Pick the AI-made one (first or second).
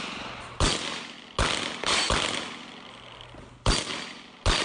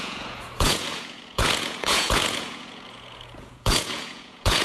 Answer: second